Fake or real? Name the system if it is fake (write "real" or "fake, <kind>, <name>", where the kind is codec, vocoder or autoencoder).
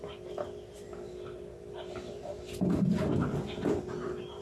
real